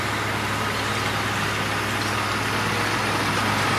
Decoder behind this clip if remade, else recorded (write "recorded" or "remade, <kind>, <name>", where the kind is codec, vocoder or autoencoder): recorded